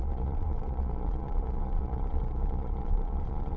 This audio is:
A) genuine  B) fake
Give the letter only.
B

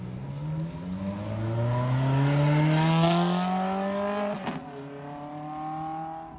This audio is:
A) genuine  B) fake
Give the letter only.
A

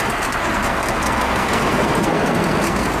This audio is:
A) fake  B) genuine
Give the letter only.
A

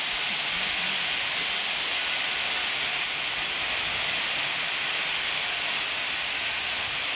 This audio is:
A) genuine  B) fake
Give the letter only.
A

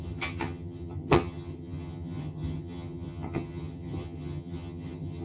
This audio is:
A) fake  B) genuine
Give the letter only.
A